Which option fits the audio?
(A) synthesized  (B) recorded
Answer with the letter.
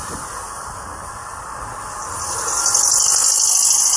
B